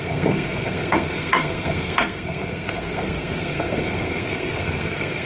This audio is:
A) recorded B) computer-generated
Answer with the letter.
B